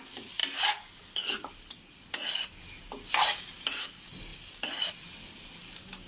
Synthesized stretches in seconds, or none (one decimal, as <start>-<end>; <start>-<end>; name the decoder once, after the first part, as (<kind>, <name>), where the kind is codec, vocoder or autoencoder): none

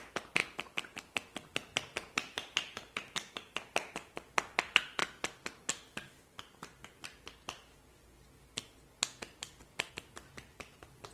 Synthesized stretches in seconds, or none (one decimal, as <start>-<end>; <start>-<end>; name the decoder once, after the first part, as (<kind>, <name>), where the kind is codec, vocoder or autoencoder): none

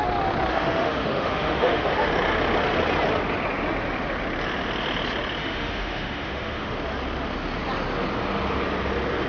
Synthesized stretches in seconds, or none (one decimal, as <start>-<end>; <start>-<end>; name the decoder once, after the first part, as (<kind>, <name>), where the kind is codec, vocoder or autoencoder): 0.5-2.1 (autoencoder, DAC-VAE); 5.4-6.7

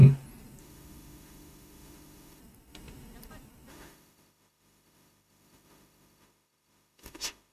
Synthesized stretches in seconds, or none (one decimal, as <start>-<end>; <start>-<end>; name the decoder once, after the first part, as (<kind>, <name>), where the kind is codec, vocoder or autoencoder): 0.6-2.4 (autoencoder, DAC-VAE); 3.7-7.5

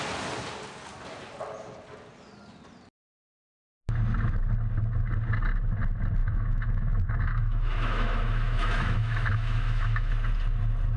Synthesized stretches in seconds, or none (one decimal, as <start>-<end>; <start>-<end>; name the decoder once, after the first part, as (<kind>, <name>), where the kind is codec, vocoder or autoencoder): 6.2-10.1 (autoencoder, DAC-VAE)

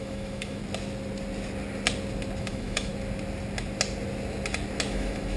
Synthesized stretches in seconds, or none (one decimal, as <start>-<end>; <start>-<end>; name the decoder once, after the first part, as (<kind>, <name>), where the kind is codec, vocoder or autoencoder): 0.0-0.6 (autoencoder, DAC-VAE); 2.4-2.9; 4.9-5.4

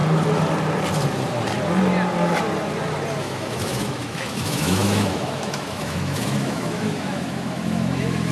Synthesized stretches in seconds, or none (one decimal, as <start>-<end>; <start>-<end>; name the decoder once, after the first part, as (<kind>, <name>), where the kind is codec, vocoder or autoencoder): 3.2-8.3 (autoencoder, DAC-VAE)

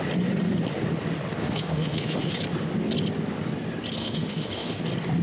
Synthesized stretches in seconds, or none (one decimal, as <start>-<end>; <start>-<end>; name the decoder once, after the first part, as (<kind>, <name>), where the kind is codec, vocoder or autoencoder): 1.4-2.4 (autoencoder, DAC-VAE); 4.0-4.8